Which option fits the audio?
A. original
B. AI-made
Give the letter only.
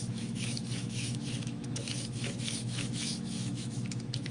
B